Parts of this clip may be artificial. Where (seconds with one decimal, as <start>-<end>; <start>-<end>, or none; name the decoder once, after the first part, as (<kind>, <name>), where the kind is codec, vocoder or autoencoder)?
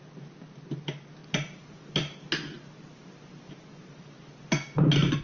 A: none